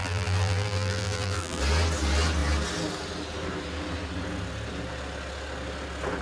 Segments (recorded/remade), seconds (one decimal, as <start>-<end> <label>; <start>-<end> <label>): 0.0-1.6 remade; 1.6-6.2 recorded